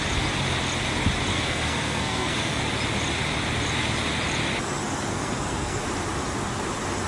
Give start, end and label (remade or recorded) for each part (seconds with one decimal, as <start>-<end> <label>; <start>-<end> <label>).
0.0-1.3 recorded; 1.3-2.6 remade; 2.6-5.1 recorded; 5.1-5.8 remade; 5.8-7.1 recorded